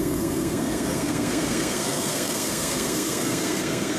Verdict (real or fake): fake